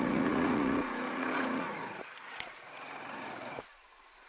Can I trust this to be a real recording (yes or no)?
no